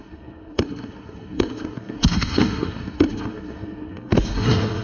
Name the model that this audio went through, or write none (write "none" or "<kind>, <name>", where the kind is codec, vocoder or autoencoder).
codec, SNAC